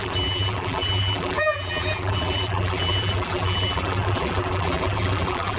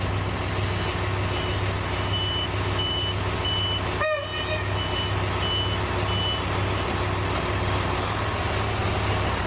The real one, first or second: second